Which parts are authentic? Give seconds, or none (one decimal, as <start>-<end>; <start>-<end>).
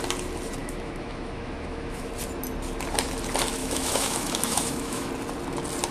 0.0-0.6; 2.1-3.6; 5.1-5.9